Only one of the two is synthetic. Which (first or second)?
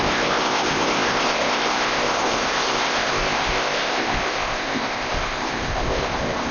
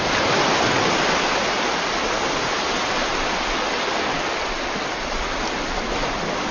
first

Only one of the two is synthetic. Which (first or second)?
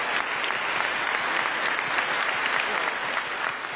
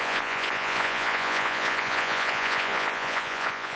second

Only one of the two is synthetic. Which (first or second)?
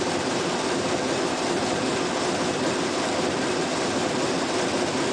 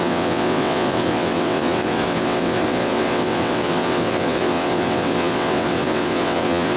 second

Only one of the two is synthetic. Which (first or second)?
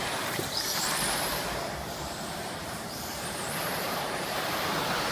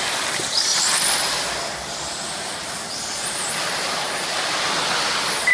first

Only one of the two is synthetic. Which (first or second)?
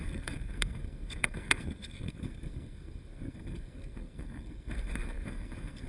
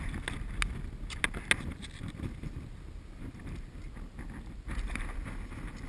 first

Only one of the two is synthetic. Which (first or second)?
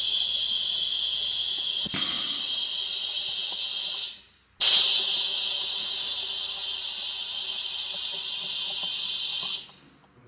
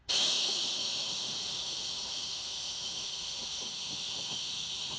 second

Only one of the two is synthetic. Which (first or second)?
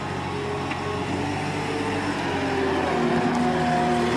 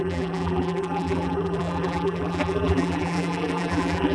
second